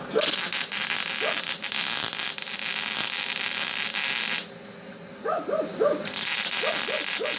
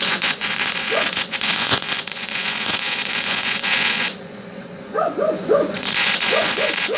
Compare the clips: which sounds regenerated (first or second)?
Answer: second